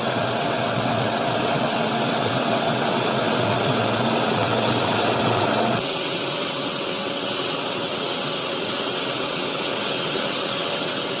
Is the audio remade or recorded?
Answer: remade